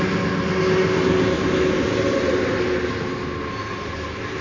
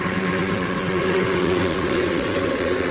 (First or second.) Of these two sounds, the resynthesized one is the second